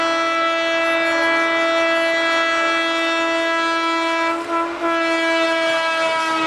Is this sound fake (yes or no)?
no